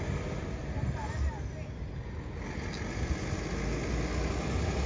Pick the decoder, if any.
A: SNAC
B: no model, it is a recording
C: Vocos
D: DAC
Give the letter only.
B